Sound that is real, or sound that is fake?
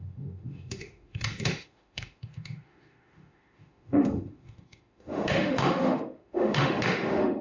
fake